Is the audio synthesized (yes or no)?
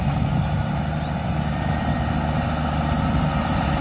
no